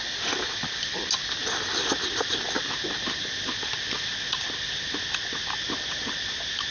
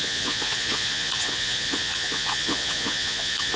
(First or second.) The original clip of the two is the first